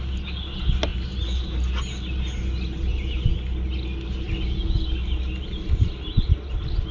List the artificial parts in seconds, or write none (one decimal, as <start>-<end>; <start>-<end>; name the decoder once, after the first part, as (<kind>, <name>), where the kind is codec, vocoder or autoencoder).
0.9-1.7 (vocoder, BigVGAN v2)